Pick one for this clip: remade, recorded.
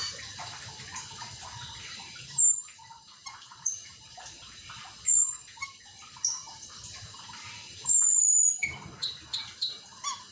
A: remade